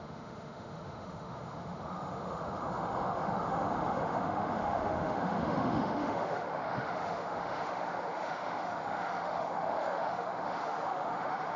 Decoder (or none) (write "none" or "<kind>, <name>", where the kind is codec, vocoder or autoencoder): autoencoder, DAC-VAE